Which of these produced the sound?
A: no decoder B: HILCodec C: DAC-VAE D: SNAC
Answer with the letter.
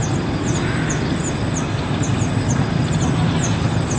A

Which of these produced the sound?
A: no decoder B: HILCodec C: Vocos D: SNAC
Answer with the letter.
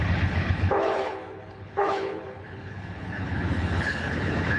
B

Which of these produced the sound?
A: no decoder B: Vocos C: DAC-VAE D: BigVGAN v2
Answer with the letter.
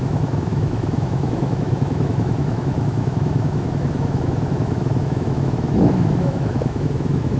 C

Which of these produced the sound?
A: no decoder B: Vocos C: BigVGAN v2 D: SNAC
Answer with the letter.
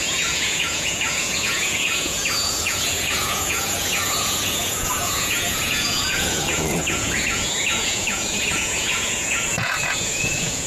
B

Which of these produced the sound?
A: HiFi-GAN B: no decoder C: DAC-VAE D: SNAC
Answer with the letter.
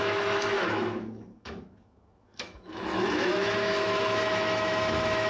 C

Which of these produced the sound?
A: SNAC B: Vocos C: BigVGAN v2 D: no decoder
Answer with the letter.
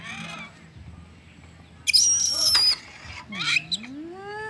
D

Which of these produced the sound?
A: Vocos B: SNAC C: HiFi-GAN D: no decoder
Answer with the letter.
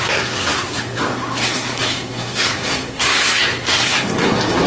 B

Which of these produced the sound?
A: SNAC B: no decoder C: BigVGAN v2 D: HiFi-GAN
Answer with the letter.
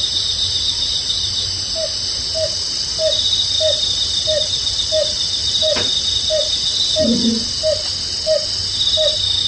B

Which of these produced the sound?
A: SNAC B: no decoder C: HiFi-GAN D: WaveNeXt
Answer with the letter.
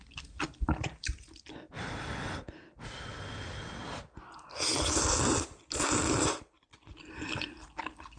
B